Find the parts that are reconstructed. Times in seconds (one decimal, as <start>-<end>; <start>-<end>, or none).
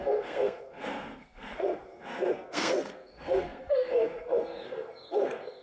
0.0-5.6